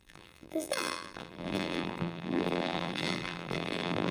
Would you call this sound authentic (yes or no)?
no